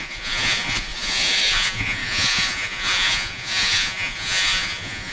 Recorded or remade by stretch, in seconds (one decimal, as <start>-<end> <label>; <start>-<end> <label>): 0.0-5.1 remade